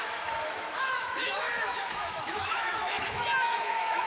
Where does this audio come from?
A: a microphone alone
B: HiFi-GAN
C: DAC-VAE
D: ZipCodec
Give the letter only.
C